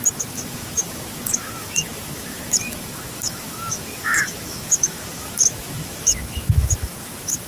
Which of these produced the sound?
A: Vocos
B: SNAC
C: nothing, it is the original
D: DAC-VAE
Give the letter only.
D